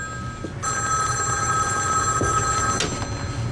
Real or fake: real